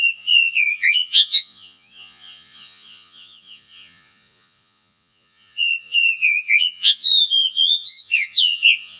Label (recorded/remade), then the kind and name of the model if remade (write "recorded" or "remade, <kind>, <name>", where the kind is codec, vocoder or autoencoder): remade, vocoder, Vocos